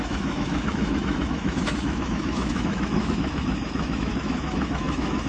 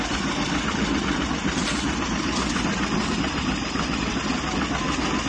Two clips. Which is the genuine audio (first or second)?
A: second